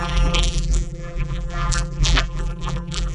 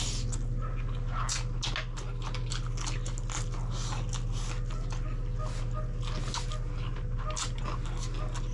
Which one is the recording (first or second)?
second